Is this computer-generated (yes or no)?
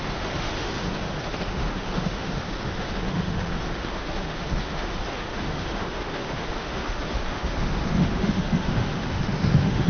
yes